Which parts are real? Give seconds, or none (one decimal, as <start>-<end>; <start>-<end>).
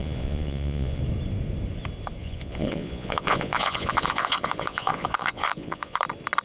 1.0-2.2; 6.0-6.4